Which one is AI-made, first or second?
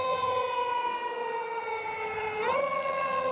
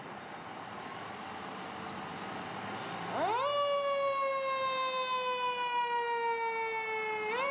first